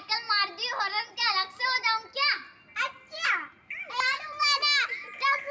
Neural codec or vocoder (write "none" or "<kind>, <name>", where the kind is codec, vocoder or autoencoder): none